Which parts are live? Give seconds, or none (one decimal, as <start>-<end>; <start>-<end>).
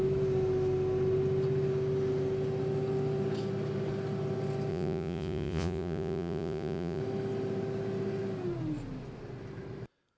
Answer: 0.0-4.7; 7.0-10.2